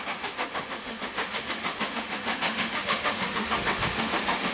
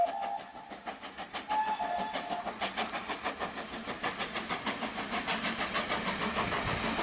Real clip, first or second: second